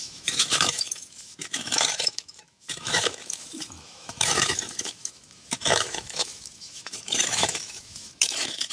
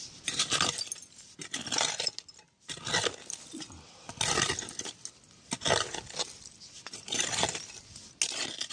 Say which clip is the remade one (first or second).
first